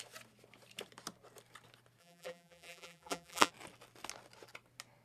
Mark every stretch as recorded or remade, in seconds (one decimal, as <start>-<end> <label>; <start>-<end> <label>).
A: 0.0-2.0 recorded; 2.0-3.5 remade; 3.5-5.0 recorded